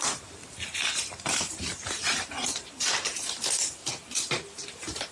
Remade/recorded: remade